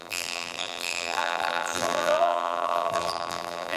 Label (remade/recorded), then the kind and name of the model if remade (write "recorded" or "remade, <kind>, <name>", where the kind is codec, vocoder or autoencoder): remade, vocoder, BigVGAN v2